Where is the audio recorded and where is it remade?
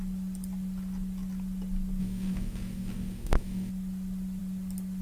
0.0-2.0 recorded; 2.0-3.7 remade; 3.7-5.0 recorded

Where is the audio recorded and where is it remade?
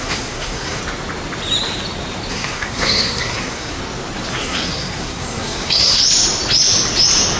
0.0-0.8 remade; 0.8-2.3 recorded; 2.3-3.8 remade; 3.8-4.3 recorded; 4.3-6.0 remade; 6.0-7.4 recorded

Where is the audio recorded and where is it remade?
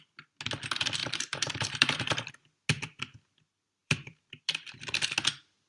0.0-1.0 recorded; 1.0-2.3 remade; 2.3-3.8 recorded; 3.8-4.8 remade; 4.8-5.7 recorded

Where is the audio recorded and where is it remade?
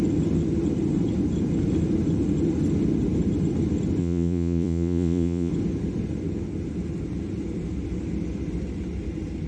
0.0-4.0 recorded; 4.0-5.5 remade; 5.5-9.5 recorded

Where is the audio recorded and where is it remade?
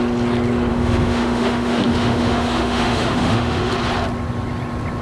0.0-0.7 recorded; 0.7-3.7 remade; 3.7-5.0 recorded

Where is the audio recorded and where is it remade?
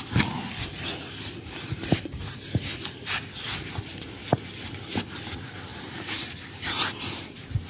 0.0-5.7 recorded; 5.7-7.3 remade; 7.3-7.7 recorded